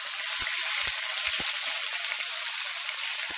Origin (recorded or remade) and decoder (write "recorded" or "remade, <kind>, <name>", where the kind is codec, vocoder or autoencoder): recorded